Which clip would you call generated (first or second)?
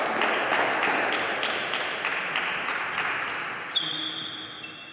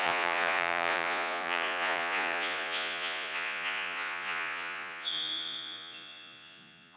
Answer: second